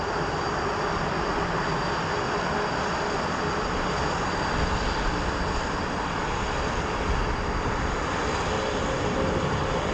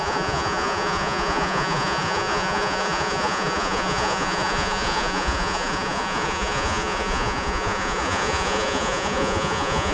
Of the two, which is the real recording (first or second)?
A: first